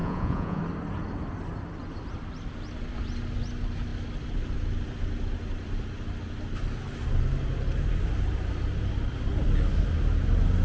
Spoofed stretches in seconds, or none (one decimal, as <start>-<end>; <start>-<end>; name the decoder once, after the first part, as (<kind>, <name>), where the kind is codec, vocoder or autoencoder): 0.0-0.6 (vocoder, Vocos)